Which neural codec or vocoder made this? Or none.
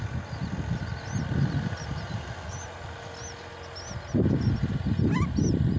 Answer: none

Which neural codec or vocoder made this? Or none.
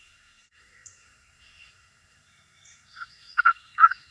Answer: codec, SNAC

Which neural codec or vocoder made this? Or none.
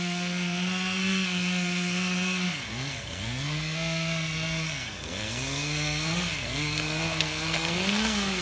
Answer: codec, SNAC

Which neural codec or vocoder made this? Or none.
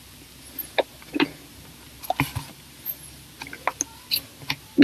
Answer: none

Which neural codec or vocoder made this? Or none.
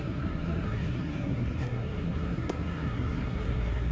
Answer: codec, SNAC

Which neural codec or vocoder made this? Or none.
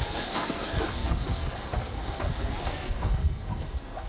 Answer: codec, SNAC